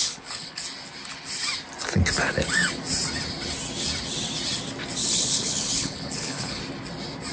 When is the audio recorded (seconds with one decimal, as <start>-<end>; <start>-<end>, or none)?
0.6-5.0; 6.6-7.3